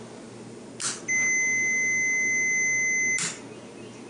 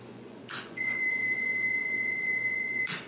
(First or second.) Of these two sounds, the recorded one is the first